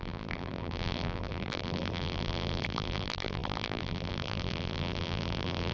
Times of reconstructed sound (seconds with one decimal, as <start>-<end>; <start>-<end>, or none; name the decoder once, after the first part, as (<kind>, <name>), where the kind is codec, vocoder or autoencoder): 0.0-5.7 (vocoder, BigVGAN v2)